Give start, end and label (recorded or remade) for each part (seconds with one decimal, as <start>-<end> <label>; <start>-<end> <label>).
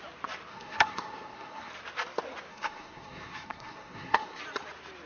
0.0-0.5 recorded; 0.5-1.7 remade; 1.7-2.5 recorded; 2.5-4.4 remade; 4.4-5.1 recorded